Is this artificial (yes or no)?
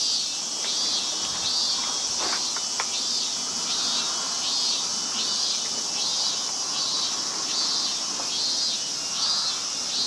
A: no